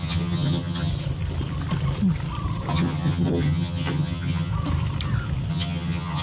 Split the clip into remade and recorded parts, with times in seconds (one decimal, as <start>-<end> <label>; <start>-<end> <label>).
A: 0.0-0.9 remade; 0.9-2.7 recorded; 2.7-4.5 remade; 4.5-5.5 recorded; 5.5-6.2 remade